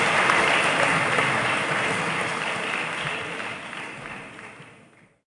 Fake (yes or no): no